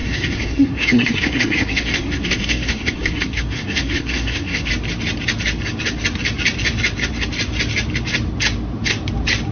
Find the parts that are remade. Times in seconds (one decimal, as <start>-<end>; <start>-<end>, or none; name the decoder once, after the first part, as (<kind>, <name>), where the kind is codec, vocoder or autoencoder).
0.0-4.7 (codec, SNAC)